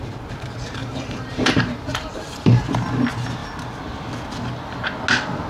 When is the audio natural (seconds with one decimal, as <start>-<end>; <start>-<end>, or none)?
0.0-0.8; 2.7-5.5